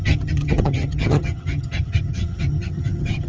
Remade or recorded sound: remade